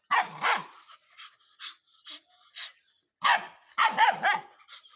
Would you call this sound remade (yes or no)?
no